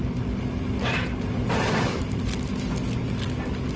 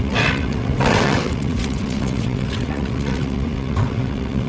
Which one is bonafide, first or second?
first